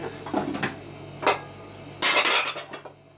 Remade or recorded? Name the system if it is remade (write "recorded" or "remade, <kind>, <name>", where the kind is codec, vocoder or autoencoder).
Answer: recorded